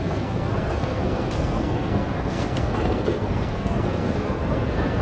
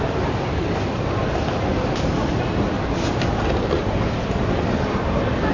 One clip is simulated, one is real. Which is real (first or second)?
second